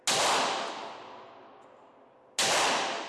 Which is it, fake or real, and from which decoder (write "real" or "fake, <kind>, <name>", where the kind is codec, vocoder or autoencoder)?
real